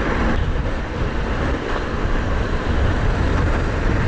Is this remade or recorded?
remade